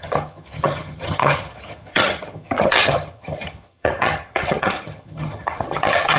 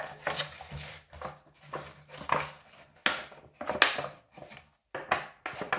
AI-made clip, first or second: first